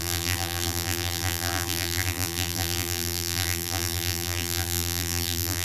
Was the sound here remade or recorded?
remade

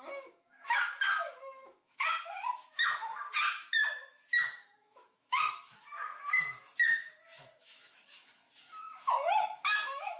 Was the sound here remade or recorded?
remade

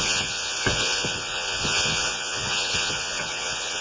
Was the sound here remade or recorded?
remade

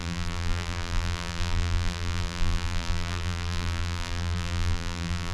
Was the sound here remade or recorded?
remade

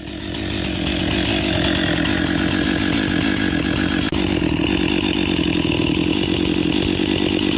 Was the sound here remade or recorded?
recorded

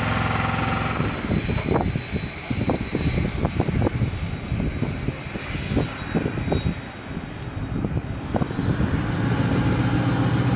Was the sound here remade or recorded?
recorded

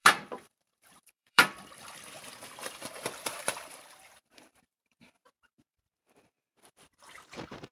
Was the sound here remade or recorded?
remade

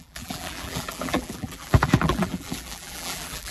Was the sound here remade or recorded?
remade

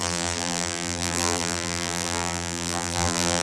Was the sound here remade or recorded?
remade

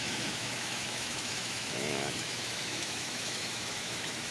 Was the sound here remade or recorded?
remade